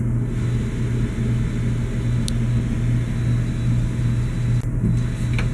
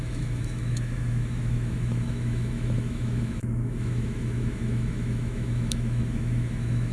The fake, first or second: second